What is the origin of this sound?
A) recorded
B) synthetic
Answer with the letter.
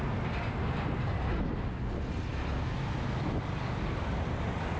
A